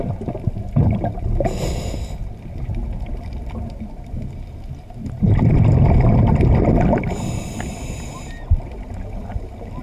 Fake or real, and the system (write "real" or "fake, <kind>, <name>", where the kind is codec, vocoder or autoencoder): real